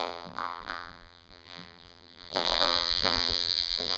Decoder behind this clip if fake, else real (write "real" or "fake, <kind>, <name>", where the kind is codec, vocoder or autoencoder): fake, vocoder, BigVGAN v2